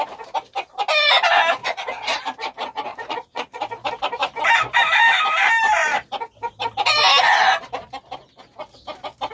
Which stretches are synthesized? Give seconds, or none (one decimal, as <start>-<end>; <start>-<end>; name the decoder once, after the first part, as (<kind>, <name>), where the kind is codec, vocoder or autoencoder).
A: 1.6-2.2 (vocoder, Vocos); 2.9-3.6